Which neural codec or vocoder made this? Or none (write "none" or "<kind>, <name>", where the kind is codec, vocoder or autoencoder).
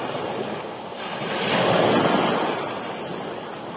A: none